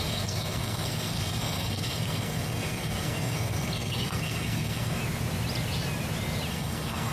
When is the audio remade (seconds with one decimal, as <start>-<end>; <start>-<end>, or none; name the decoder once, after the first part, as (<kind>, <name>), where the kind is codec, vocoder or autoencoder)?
0.0-5.0 (codec, SNAC); 6.5-7.1